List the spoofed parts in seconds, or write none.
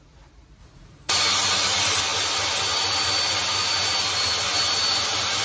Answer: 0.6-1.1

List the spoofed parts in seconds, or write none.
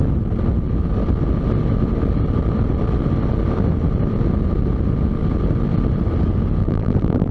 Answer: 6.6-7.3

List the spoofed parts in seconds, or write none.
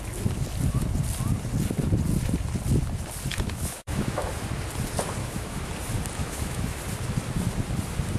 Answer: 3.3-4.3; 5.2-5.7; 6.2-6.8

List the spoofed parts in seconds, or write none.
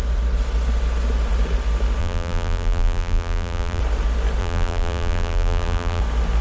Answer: 2.0-3.8; 4.4-6.0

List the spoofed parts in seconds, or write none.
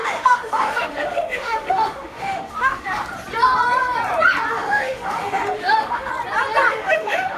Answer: 0.0-3.0; 4.5-6.1; 6.7-7.4